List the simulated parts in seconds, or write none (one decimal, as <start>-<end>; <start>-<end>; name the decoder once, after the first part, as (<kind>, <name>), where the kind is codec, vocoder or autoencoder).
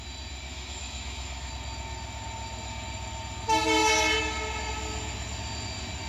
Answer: 0.5-1.5 (autoencoder, DAC-VAE)